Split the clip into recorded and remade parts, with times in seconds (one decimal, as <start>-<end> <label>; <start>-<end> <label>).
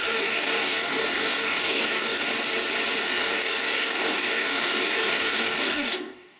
0.0-2.3 remade; 2.3-3.0 recorded; 3.0-6.4 remade